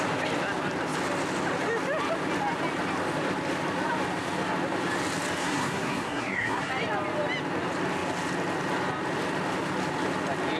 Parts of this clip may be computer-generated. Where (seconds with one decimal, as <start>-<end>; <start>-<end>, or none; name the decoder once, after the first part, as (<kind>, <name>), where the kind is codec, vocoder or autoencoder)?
5.4-6.7 (codec, SNAC)